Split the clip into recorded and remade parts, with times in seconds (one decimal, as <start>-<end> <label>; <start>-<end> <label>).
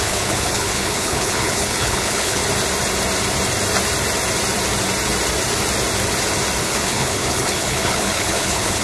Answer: 0.0-2.4 remade; 2.4-6.6 recorded; 6.6-8.8 remade